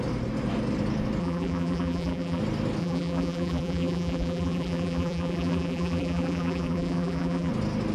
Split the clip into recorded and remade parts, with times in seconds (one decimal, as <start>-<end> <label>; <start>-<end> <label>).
0.0-1.2 recorded; 1.2-2.4 remade; 2.4-2.8 recorded; 2.8-7.5 remade; 7.5-7.9 recorded